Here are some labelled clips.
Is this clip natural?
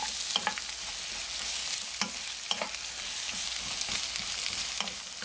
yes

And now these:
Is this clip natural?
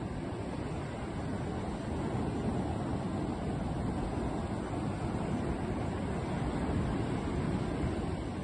yes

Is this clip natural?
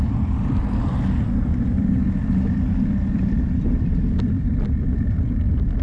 no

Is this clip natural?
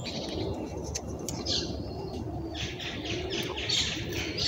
yes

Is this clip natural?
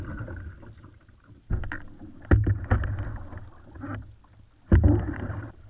yes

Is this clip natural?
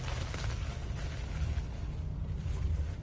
yes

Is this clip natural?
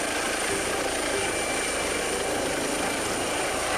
yes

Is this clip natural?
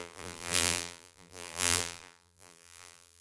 no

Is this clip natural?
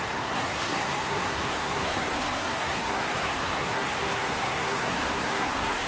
no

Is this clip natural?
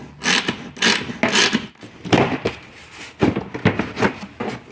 yes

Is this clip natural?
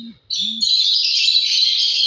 yes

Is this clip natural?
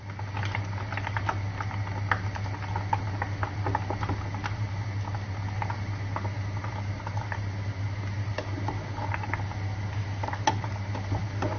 yes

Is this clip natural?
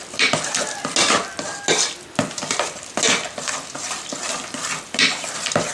yes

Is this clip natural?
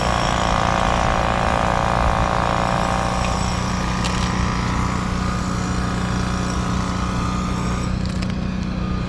yes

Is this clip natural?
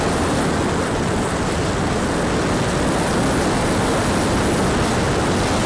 yes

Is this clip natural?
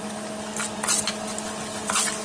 yes